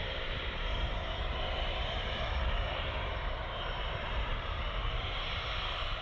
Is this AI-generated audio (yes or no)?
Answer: yes